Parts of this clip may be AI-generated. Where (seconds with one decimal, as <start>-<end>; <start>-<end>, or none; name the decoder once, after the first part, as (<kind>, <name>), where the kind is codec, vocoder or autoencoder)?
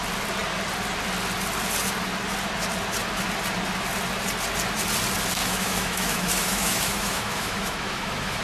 5.4-8.4 (autoencoder, DAC-VAE)